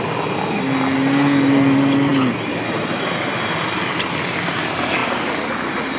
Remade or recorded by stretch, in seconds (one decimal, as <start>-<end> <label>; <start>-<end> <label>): 0.0-5.0 recorded; 5.0-6.0 remade